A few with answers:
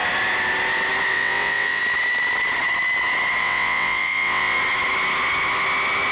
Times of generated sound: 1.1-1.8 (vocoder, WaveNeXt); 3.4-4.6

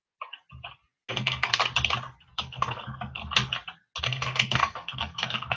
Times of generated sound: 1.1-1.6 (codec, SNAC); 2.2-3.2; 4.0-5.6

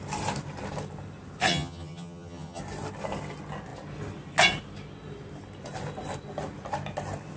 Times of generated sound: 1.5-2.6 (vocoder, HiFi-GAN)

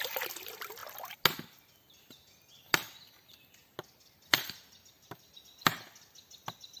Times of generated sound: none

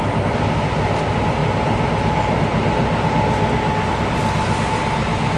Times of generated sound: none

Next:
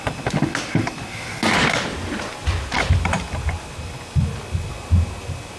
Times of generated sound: 1.9-3.7 (vocoder, BigVGAN v2)